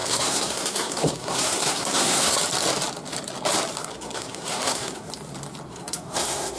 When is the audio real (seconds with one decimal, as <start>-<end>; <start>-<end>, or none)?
2.4-3.8; 5.1-5.7